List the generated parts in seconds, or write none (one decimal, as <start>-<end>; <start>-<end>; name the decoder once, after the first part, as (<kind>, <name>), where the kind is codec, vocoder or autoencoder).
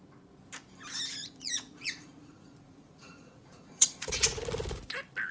1.2-4.4 (vocoder, Vocos)